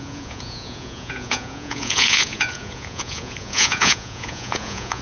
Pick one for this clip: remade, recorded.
remade